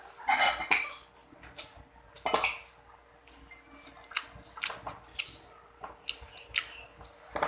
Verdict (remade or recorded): recorded